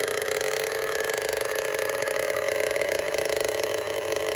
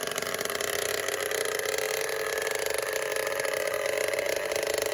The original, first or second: second